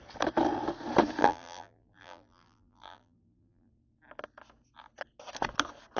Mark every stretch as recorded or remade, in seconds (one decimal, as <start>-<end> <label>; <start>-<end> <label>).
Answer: 0.0-1.2 recorded; 1.2-3.7 remade; 3.7-6.0 recorded